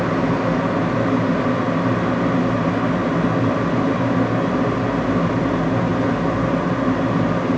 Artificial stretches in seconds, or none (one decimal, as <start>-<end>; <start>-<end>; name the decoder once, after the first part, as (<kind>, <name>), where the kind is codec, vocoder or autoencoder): none